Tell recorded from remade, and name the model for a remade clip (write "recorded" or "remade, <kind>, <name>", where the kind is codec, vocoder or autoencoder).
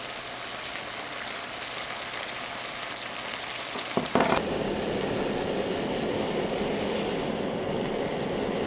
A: recorded